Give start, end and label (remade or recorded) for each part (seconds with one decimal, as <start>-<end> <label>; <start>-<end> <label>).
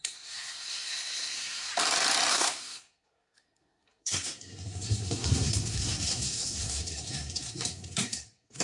0.0-1.7 remade; 1.7-2.3 recorded; 2.3-8.6 remade